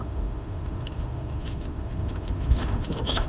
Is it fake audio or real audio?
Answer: fake